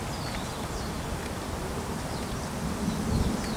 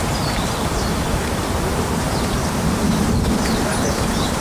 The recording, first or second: first